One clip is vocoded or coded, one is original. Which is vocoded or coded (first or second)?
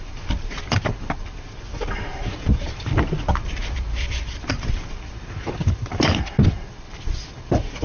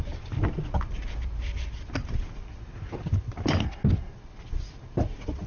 first